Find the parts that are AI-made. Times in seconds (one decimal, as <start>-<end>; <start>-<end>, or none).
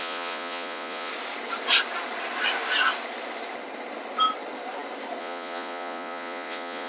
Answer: 0.0-1.1; 5.2-6.9